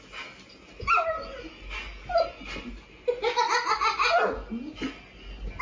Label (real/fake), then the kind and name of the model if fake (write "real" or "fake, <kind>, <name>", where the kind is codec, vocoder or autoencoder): real